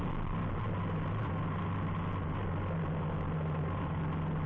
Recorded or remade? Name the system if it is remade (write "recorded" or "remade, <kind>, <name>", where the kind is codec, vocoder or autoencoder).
recorded